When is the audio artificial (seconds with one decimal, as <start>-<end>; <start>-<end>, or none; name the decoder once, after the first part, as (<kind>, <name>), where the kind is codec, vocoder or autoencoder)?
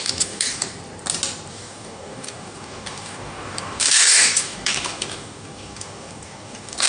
0.0-0.7 (codec, DAC); 1.5-6.9